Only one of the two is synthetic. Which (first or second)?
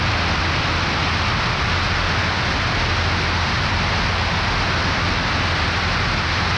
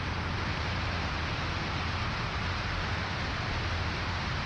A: second